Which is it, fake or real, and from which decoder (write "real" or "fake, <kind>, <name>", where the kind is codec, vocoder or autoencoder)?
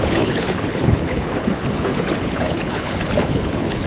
fake, codec, HILCodec